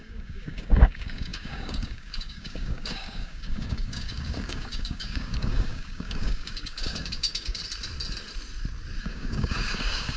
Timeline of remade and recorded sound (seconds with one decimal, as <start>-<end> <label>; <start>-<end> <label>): 0.0-7.6 remade; 7.6-9.0 recorded; 9.0-10.2 remade